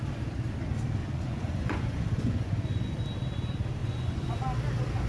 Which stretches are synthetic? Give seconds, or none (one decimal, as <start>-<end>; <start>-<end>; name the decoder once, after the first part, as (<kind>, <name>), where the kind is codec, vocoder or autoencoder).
1.0-2.9 (vocoder, Vocos); 3.8-4.4